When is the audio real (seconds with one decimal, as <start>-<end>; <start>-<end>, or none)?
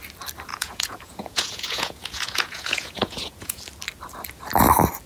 0.0-0.5; 3.6-5.1